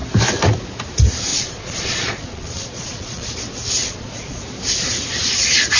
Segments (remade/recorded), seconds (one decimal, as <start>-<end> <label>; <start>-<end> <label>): 0.0-1.3 recorded; 1.3-3.3 remade; 3.3-3.8 recorded; 3.8-4.4 remade; 4.4-5.8 recorded